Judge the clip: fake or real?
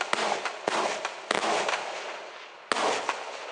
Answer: real